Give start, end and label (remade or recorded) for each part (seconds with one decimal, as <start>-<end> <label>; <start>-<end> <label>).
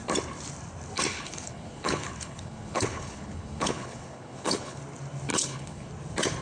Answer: 0.0-1.1 recorded; 1.1-4.8 remade; 4.8-5.3 recorded; 5.3-5.9 remade; 5.9-6.4 recorded